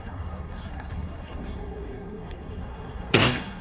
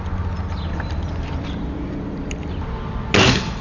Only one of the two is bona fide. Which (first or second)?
second